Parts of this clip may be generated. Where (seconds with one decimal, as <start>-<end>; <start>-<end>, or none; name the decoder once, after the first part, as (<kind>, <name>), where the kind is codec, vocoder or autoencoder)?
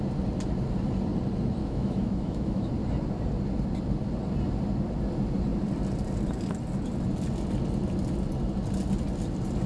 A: 1.6-2.7 (autoencoder, DAC-VAE)